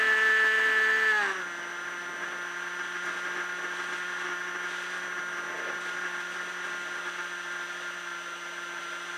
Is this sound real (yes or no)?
yes